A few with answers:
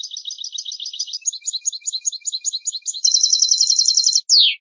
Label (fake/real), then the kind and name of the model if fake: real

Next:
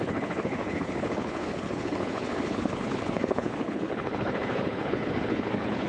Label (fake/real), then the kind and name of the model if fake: fake, codec, HILCodec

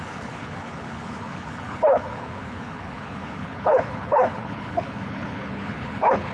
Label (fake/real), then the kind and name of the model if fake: fake, codec, HILCodec